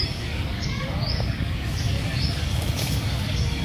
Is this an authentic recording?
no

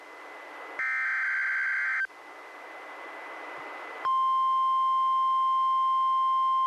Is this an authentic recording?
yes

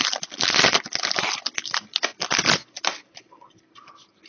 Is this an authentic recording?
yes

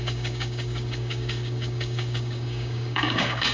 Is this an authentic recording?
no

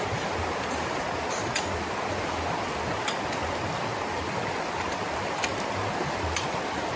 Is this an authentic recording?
yes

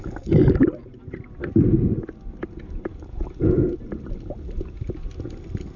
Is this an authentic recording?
yes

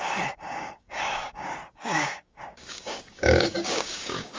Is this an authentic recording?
no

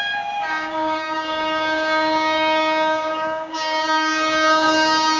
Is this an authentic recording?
no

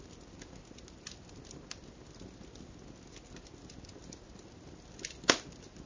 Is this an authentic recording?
yes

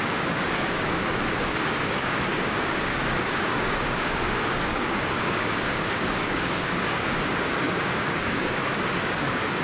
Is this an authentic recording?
no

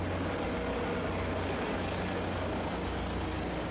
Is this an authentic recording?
yes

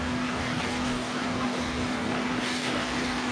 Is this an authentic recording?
no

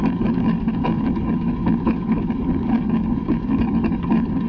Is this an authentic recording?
no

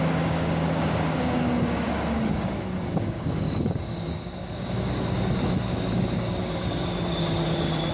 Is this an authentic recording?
no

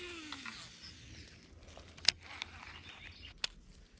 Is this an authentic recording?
yes